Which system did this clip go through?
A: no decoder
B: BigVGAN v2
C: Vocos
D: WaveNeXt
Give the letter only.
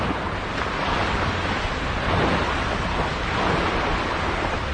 A